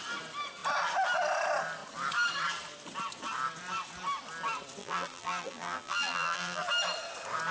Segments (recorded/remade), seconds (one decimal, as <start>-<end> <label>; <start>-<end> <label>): 0.0-4.8 recorded; 4.8-6.6 remade; 6.6-7.5 recorded